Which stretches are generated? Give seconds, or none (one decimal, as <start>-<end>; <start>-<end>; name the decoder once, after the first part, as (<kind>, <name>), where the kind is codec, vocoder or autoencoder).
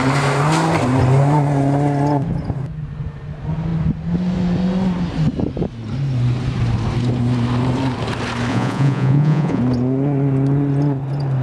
8.5-9.6 (vocoder, Vocos)